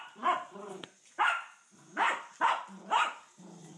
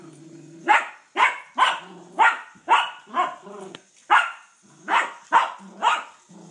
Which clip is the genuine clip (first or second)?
second